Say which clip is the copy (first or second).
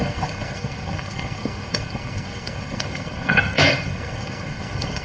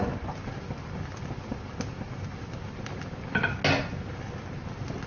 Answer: first